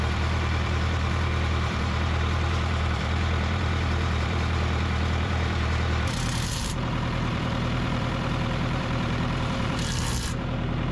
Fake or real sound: fake